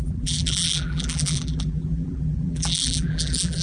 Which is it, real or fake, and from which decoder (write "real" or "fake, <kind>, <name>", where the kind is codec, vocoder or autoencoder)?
fake, vocoder, BigVGAN v2